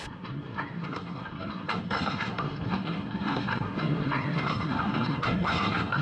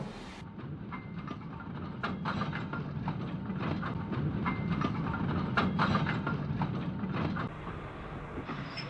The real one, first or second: second